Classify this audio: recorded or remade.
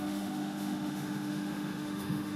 remade